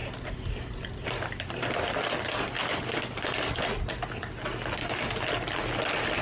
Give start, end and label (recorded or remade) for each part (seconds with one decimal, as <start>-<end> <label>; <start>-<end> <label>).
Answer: 0.0-1.6 remade; 1.6-2.6 recorded; 2.6-3.5 remade; 3.5-6.2 recorded